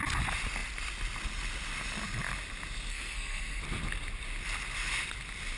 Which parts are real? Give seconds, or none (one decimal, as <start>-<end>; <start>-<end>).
0.0-2.9; 3.6-5.6